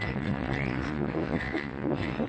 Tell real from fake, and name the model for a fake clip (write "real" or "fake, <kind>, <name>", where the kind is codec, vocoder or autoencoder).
fake, vocoder, WaveNeXt